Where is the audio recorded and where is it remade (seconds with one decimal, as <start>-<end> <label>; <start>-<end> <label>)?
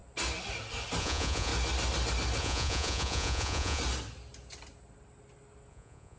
0.0-1.0 recorded; 1.0-1.5 remade; 1.5-2.4 recorded; 2.4-3.8 remade; 3.8-5.7 recorded; 5.7-6.2 remade